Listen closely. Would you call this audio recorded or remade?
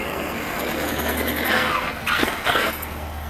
remade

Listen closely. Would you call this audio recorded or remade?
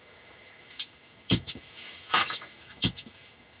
remade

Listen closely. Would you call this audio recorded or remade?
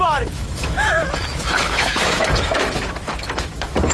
remade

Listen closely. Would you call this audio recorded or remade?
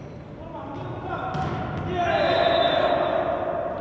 recorded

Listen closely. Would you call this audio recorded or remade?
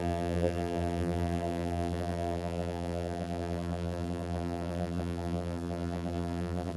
remade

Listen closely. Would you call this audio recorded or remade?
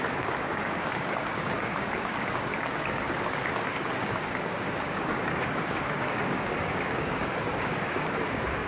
remade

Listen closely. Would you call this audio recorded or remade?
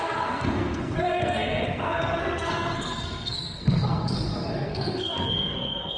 remade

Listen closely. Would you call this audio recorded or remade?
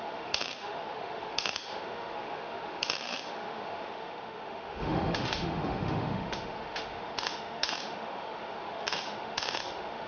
remade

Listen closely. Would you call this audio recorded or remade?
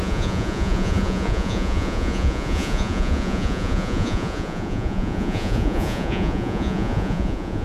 remade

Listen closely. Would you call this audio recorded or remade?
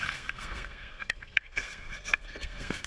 remade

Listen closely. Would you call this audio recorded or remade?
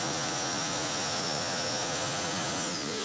remade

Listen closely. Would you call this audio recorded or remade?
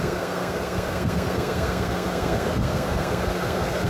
remade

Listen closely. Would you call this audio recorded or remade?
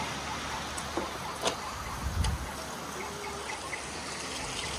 recorded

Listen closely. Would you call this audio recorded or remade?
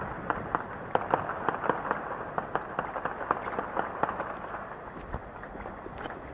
recorded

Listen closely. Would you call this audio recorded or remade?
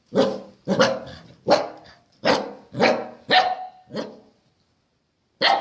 recorded